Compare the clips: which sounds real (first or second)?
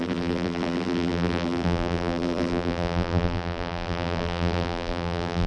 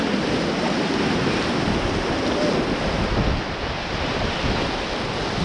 second